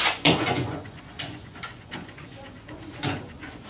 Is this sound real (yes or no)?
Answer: no